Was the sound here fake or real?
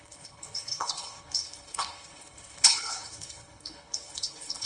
fake